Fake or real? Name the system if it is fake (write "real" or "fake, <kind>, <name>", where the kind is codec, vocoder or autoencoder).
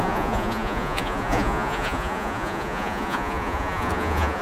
fake, vocoder, Vocos